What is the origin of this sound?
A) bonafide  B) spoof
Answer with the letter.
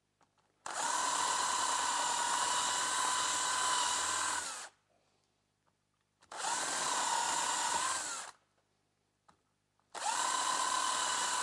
A